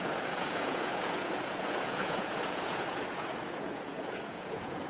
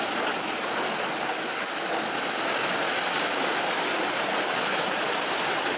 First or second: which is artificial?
first